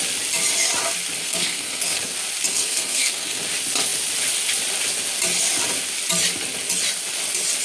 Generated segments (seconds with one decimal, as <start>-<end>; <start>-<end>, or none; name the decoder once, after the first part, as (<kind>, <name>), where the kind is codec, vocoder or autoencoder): 1.2-2.0 (codec, SNAC); 2.5-3.4